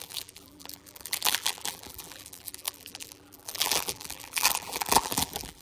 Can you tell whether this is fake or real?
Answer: fake